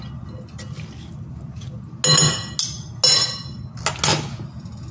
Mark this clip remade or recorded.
recorded